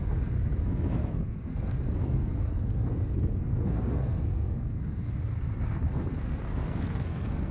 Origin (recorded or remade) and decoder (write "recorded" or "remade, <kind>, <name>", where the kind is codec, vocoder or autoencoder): remade, codec, SNAC